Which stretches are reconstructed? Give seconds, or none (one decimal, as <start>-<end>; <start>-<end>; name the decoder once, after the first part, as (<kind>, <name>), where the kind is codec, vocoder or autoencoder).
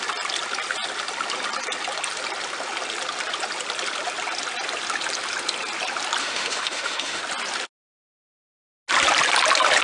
6.2-7.2 (autoencoder, DAC-VAE)